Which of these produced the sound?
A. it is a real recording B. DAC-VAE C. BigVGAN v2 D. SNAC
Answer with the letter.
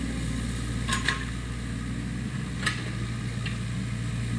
A